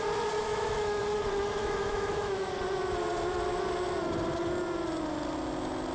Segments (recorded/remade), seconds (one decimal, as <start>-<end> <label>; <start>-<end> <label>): 0.0-0.4 recorded; 0.4-1.0 remade; 1.0-1.6 recorded; 1.6-2.5 remade; 2.5-5.9 recorded